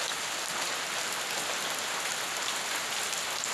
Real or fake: real